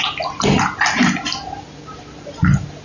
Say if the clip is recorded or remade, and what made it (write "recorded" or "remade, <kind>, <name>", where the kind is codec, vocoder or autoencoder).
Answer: recorded